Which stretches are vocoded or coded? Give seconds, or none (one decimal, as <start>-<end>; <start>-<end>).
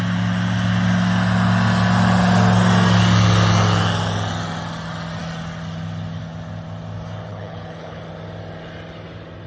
7.3-8.0